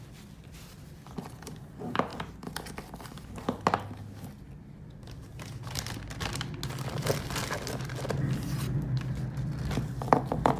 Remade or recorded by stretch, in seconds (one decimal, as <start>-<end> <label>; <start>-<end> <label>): 0.0-10.6 recorded